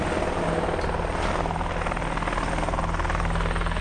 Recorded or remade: recorded